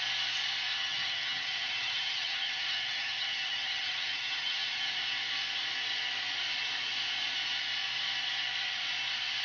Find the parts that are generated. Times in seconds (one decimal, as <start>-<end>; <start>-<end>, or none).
0.7-4.9